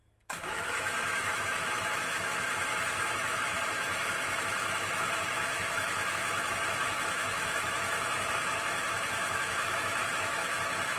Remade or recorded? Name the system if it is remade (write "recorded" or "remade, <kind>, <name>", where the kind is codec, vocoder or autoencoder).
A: remade, autoencoder, DAC-VAE